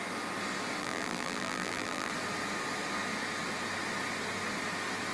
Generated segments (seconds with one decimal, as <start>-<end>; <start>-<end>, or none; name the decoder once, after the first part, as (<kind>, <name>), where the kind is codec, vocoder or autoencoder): 0.8-2.1 (vocoder, BigVGAN v2)